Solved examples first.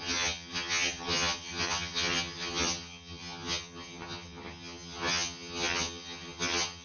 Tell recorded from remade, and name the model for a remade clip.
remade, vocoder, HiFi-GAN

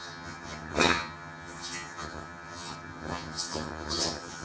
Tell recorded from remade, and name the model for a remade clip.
remade, vocoder, HiFi-GAN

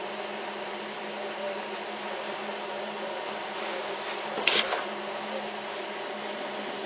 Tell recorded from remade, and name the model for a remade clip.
recorded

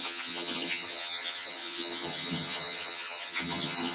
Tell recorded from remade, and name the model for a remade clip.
remade, vocoder, HiFi-GAN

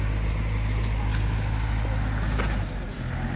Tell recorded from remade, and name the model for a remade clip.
recorded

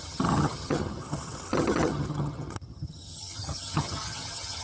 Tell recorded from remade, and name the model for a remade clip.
remade, vocoder, HiFi-GAN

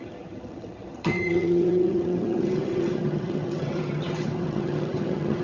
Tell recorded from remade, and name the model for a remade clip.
remade, vocoder, HiFi-GAN